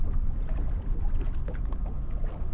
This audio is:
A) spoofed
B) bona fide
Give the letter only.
B